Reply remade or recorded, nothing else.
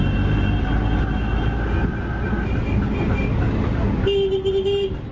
recorded